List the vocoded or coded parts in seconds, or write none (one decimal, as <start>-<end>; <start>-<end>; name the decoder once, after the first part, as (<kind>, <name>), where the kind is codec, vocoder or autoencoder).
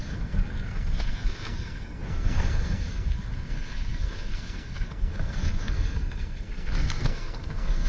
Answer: 0.0-7.9 (codec, SNAC)